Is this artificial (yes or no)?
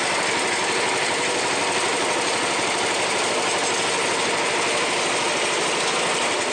no